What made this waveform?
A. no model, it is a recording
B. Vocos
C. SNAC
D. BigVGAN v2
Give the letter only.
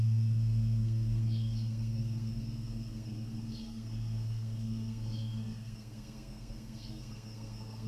C